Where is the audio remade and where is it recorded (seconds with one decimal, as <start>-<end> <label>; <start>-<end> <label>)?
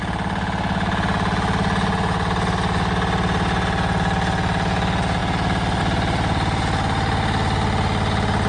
0.0-8.5 recorded